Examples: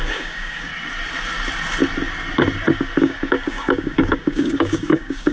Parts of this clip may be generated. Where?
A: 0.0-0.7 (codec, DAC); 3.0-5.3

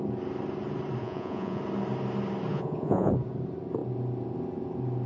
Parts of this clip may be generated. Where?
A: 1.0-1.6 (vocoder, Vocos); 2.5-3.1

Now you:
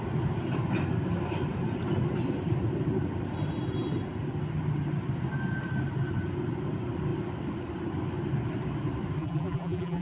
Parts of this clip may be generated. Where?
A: 9.2-10.0 (vocoder, BigVGAN v2)